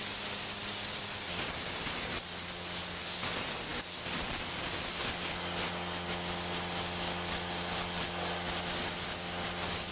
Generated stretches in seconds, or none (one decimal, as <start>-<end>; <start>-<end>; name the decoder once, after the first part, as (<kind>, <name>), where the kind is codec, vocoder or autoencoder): none